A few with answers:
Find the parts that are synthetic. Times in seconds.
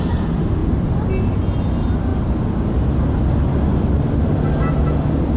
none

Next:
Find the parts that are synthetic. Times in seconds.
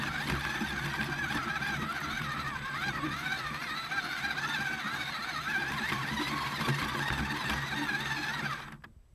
1.4-6.7 (vocoder, BigVGAN v2)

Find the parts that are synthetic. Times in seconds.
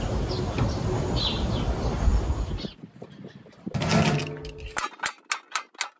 none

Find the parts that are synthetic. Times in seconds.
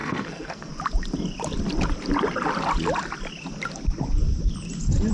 0.0-0.7 (codec, SNAC)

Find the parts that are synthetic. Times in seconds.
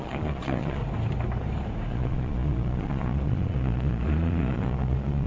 0.0-0.8 (vocoder, Vocos); 1.9-5.3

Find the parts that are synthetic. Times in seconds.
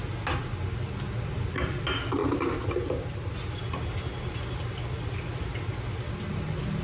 none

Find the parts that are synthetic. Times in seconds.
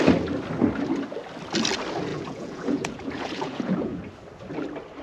2.1-4.0 (vocoder, Vocos)